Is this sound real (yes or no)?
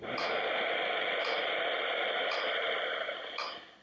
yes